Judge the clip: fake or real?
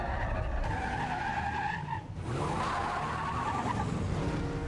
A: real